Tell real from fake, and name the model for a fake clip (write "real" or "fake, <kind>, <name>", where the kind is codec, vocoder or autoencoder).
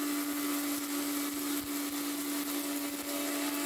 real